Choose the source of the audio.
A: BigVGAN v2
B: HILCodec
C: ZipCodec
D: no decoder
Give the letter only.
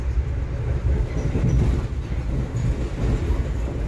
D